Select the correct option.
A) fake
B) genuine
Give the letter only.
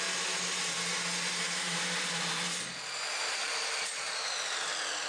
B